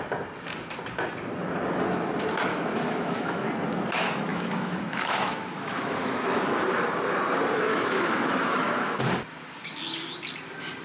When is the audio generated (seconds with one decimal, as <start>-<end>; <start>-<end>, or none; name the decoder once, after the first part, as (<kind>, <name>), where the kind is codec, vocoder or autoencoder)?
2.5-3.5 (autoencoder, DAC-VAE); 4.3-6.4; 7.7-9.0